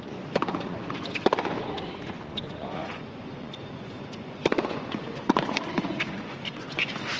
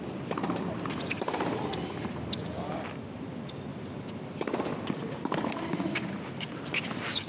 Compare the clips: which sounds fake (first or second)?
first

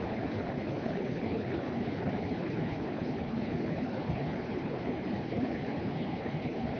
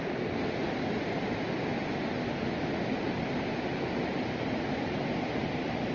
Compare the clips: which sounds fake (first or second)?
first